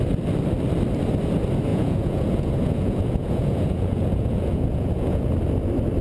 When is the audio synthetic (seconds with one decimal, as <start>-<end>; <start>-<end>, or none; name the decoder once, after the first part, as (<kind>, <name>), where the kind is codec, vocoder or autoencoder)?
1.7-5.3 (vocoder, Vocos)